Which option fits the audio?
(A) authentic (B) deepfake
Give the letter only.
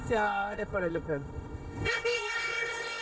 B